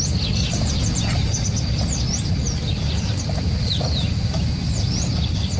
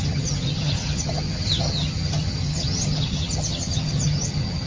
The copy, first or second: second